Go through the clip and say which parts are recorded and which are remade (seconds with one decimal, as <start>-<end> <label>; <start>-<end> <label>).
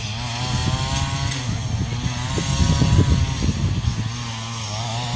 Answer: 0.0-5.2 recorded